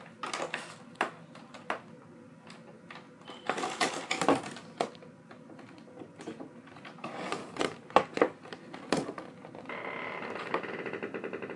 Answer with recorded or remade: recorded